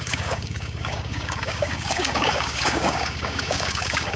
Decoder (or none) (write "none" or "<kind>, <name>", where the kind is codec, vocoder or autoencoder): codec, DAC